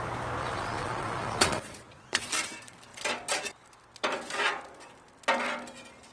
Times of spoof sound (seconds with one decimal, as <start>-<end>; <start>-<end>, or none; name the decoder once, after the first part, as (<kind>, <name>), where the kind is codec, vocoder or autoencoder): 0.4-2.3 (vocoder, Vocos)